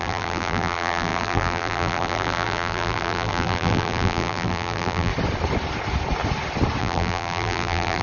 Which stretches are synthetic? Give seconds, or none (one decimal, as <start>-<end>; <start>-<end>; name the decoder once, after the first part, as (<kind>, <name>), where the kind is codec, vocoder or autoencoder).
0.0-5.1 (vocoder, BigVGAN v2); 6.8-8.0